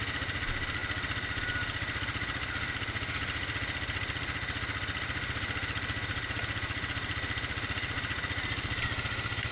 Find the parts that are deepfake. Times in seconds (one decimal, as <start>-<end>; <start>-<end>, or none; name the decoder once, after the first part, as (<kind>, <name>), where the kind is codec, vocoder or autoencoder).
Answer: none